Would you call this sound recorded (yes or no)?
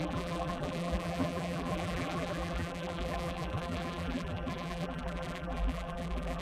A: no